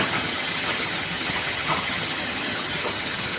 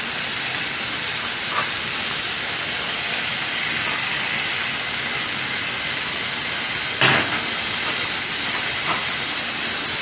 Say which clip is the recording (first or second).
second